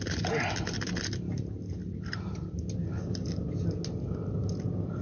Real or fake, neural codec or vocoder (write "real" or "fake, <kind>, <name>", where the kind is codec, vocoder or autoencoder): real